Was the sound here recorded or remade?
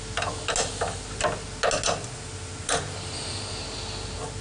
recorded